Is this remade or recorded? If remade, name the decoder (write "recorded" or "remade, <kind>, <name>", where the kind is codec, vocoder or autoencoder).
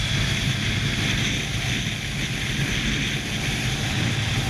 recorded